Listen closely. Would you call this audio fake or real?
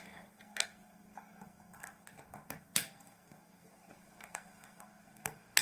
fake